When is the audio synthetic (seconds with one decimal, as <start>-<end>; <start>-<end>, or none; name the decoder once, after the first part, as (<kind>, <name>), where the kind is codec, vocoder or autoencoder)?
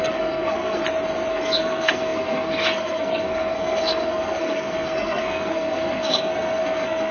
0.0-0.8 (codec, SNAC); 1.3-7.1